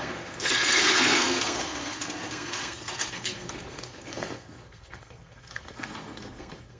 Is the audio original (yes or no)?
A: no